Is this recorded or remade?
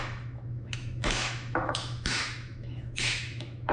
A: remade